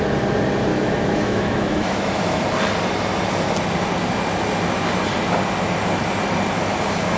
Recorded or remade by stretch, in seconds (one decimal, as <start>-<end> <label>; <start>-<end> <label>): 0.0-0.7 recorded; 0.7-2.4 remade; 2.4-7.2 recorded